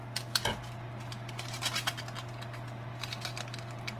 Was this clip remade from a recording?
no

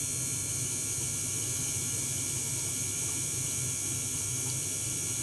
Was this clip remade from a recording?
no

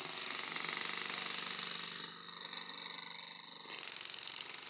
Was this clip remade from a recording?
no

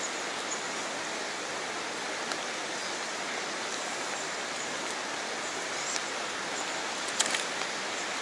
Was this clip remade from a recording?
no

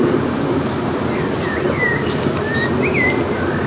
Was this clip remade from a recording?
no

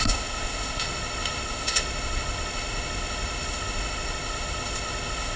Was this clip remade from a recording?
yes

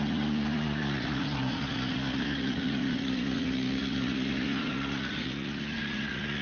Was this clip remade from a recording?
yes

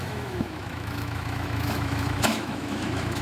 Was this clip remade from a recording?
yes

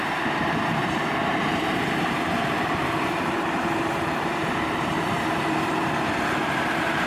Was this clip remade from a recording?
yes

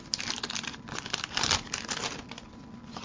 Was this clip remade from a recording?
no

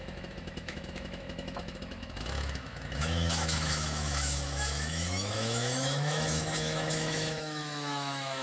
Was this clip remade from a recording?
yes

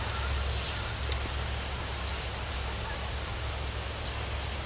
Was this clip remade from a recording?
no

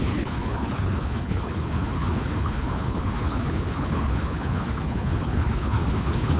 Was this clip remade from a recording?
yes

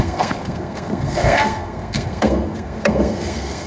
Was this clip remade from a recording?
yes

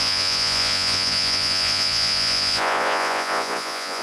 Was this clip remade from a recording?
yes